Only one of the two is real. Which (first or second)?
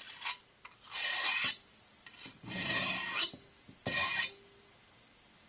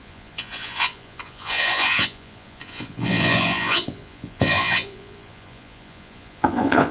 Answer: first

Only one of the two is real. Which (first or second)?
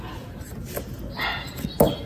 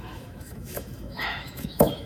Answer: first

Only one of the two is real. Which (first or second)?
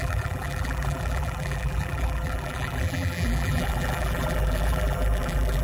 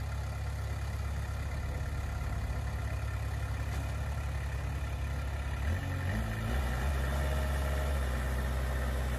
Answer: second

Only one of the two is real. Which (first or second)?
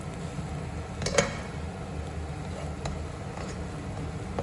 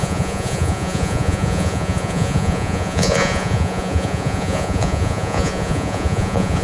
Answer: first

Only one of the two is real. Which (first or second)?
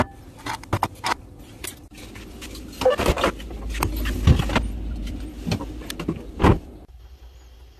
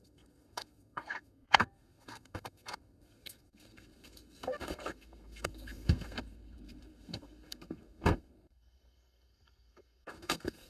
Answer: first